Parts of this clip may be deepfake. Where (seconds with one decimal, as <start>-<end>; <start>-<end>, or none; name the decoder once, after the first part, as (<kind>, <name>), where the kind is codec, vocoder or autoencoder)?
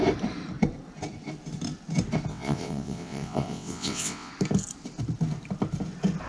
2.3-4.3 (vocoder, WaveNeXt)